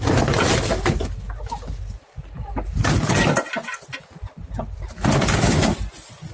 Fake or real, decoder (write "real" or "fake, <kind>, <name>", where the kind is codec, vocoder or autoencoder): real